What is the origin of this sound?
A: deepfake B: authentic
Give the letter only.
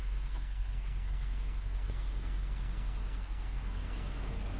A